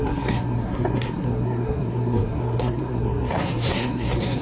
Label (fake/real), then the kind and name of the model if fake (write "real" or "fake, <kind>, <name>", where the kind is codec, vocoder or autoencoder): fake, codec, SNAC